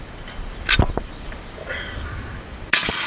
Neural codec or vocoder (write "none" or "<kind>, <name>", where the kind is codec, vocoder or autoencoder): none